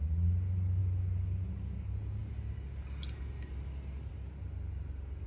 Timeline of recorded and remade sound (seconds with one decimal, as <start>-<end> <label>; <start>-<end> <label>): 0.0-5.3 recorded

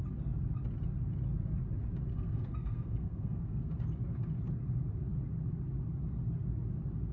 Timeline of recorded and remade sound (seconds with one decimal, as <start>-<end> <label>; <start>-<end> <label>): 0.0-2.1 recorded; 2.1-3.7 remade; 3.7-7.1 recorded